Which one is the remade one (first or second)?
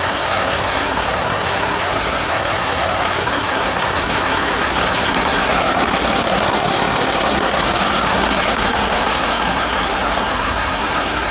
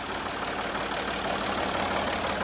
first